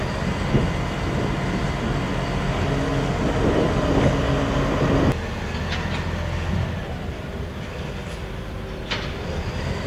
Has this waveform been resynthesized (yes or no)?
no